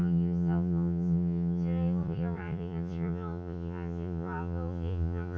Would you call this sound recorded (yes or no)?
no